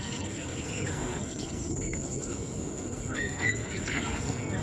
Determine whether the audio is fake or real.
fake